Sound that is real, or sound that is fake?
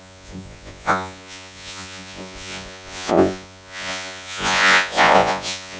fake